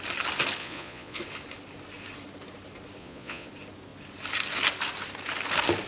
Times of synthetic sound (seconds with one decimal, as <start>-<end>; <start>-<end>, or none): 0.6-1.2; 3.0-3.5